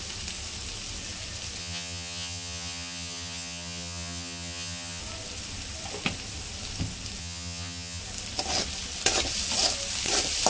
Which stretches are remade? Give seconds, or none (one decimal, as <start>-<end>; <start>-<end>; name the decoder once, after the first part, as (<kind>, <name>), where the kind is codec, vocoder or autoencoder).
1.6-5.0 (vocoder, HiFi-GAN); 7.2-8.0